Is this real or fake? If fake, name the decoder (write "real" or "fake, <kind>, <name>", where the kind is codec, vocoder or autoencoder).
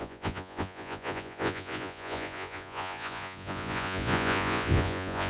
fake, vocoder, Vocos